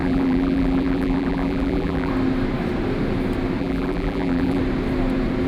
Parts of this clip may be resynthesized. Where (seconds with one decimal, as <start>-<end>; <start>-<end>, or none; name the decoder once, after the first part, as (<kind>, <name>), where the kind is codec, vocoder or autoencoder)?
0.0-2.1 (vocoder, BigVGAN v2); 3.6-4.6